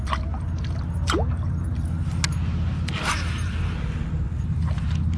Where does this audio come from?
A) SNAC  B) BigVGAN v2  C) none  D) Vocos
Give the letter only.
C